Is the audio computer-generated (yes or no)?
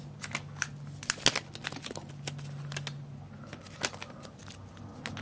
no